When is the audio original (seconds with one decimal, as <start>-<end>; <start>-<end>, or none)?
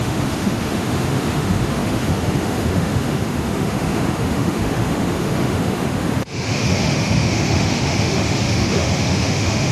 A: none